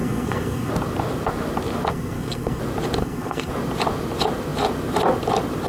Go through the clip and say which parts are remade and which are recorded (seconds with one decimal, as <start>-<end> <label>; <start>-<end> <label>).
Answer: 0.0-0.7 remade; 0.7-1.9 recorded; 1.9-2.6 remade; 2.6-3.0 recorded; 3.0-3.5 remade; 3.5-5.7 recorded